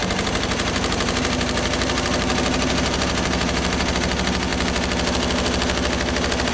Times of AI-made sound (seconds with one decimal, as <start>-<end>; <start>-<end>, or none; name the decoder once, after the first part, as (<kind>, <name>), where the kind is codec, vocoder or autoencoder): 0.0-3.9 (vocoder, BigVGAN v2)